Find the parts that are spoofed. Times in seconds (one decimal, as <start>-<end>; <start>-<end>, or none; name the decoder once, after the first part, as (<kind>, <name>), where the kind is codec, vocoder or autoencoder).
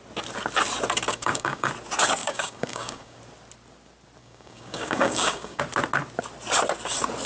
1.1-1.7 (codec, DAC); 2.2-3.2; 4.2-5.6